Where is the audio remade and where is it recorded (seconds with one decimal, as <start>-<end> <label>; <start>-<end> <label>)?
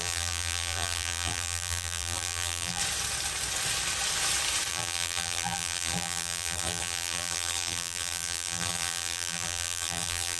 0.0-2.8 remade; 2.8-4.7 recorded; 4.7-10.4 remade